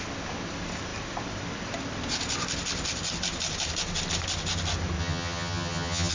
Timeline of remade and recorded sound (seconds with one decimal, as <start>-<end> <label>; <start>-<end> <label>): 0.0-5.0 recorded; 5.0-6.1 remade